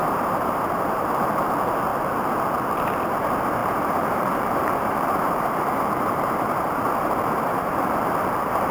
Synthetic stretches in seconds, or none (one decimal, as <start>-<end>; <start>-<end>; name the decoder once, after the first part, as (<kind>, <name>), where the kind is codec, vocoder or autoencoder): 0.0-1.5 (vocoder, BigVGAN v2); 3.6-8.1